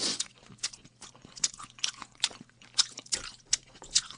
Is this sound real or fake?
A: fake